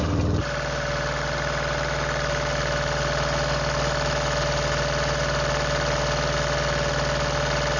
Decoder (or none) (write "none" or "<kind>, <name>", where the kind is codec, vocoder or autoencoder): none